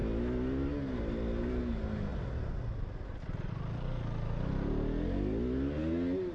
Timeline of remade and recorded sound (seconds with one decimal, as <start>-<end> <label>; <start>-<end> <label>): 0.0-6.3 recorded